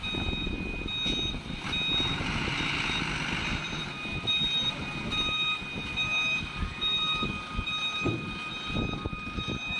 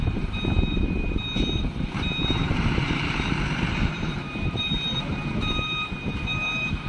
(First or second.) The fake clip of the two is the second